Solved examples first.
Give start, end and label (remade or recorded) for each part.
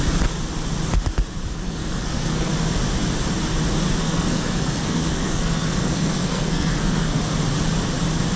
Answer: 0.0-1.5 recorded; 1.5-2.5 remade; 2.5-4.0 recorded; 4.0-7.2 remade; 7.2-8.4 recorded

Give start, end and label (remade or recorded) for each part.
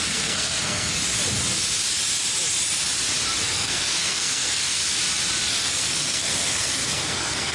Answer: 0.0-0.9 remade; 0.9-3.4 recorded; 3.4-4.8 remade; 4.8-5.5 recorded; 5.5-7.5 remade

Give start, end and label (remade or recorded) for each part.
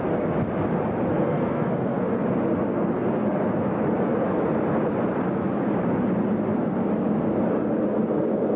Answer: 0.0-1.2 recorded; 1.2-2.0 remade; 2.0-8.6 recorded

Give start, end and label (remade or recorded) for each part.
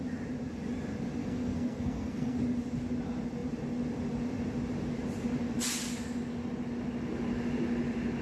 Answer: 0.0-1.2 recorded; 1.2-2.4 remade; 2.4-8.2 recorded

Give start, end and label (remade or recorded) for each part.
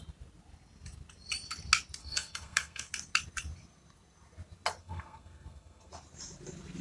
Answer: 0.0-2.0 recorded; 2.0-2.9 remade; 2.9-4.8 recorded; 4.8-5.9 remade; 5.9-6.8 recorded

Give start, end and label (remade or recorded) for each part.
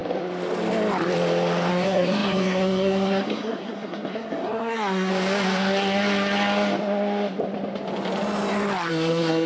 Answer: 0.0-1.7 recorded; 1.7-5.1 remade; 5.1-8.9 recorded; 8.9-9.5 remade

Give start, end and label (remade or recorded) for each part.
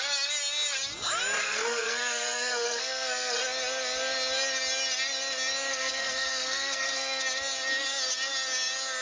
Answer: 0.0-1.4 recorded; 1.4-3.4 remade; 3.4-5.7 recorded; 5.7-7.2 remade; 7.2-9.0 recorded